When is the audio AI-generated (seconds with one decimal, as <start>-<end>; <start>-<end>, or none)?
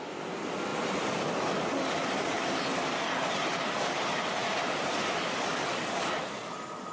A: none